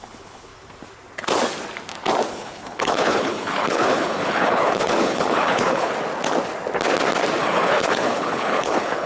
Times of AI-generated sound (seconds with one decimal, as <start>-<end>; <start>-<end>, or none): 0.0-0.5; 2.3-5.9; 7.4-9.1